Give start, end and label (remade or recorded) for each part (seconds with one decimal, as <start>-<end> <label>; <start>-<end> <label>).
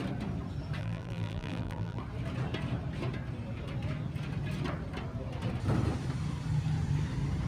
0.0-0.8 recorded; 0.8-2.0 remade; 2.0-7.5 recorded